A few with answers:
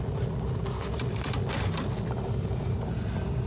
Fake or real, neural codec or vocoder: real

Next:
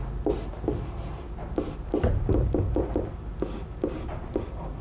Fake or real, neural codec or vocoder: real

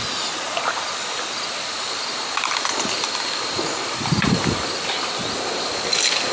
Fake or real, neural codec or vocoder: real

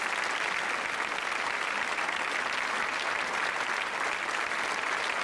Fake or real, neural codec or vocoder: real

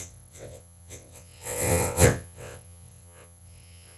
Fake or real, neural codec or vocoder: fake, vocoder, WaveNeXt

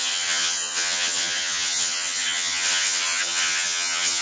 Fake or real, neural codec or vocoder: fake, vocoder, HiFi-GAN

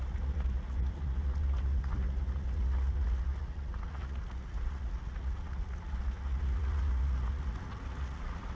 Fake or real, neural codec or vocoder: fake, vocoder, Vocos